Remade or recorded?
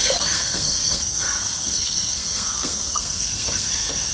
remade